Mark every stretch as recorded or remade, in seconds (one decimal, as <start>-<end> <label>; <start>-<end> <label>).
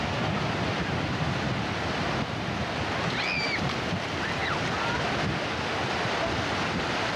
0.0-7.2 recorded